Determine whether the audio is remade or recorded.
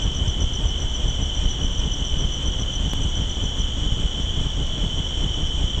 recorded